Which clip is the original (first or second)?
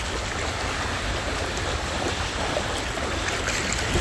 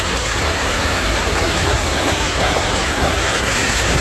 first